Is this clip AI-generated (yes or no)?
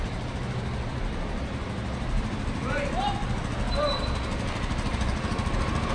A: no